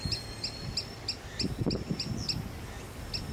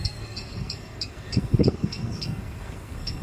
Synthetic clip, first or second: second